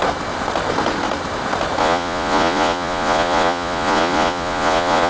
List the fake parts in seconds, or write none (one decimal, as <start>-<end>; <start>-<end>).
1.8-5.1